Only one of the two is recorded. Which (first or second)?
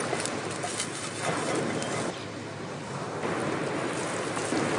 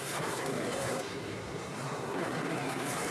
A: first